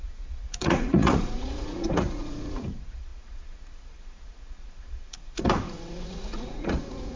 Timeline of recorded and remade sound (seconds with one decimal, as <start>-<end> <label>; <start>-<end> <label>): 0.0-7.2 remade